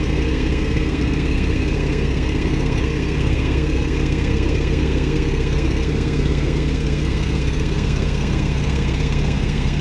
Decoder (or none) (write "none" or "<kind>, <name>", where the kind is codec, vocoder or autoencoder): codec, SNAC